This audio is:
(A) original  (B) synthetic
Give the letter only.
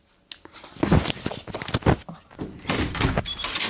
A